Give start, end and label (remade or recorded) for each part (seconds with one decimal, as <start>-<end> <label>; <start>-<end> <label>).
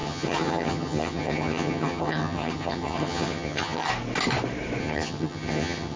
0.0-3.9 remade; 3.9-4.8 recorded; 4.8-6.0 remade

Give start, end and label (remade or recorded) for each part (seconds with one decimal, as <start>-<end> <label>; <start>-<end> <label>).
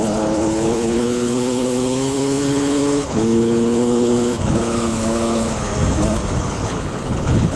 0.0-5.7 remade; 5.7-6.4 recorded; 6.4-7.6 remade